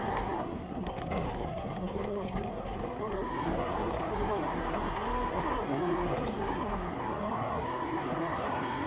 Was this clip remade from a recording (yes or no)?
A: yes